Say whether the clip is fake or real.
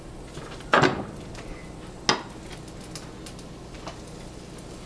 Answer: real